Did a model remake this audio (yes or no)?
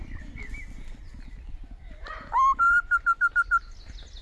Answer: no